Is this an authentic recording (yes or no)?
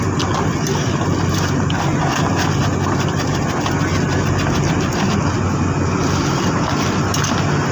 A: yes